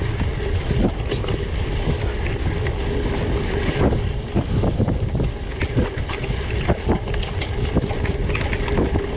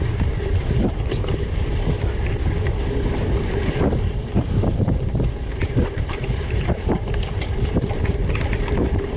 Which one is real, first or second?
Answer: first